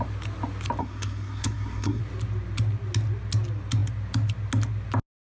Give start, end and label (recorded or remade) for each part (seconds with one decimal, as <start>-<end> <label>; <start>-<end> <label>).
0.0-0.8 recorded; 0.8-2.0 remade; 2.0-5.2 recorded